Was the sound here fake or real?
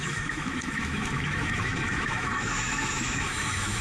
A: fake